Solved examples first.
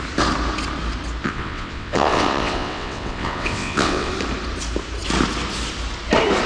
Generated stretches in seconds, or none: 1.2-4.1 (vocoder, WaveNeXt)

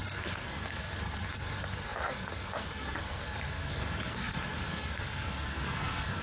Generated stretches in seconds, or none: 0.0-6.2 (codec, SNAC)

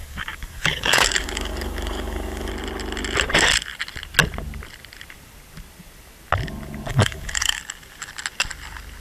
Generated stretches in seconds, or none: 0.0-2.5 (codec, DAC); 6.9-7.6

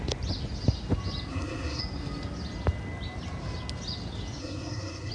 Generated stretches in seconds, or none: 1.3-1.8 (codec, SNAC); 4.4-5.1

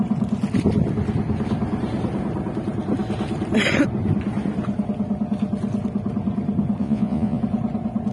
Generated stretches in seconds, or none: 6.8-7.4 (vocoder, Vocos)